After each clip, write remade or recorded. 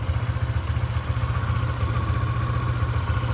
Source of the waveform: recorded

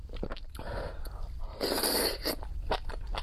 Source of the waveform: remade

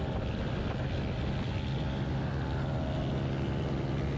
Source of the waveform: recorded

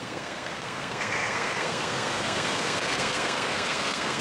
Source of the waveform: remade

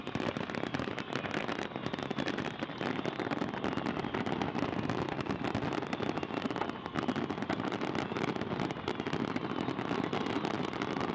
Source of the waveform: recorded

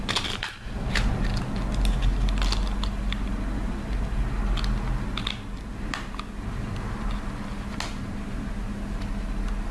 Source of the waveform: recorded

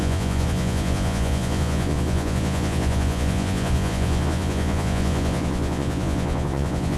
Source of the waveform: remade